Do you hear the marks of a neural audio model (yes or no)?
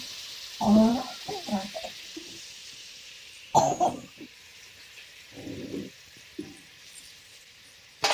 yes